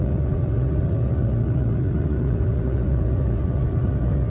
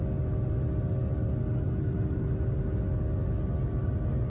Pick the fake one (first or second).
first